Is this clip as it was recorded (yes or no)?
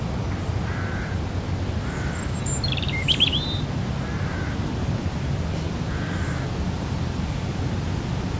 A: yes